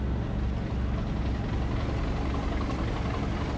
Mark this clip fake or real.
real